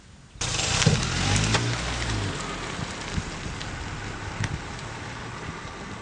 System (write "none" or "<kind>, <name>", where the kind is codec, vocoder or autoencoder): none